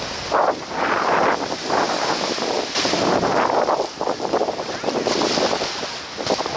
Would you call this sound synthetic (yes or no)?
no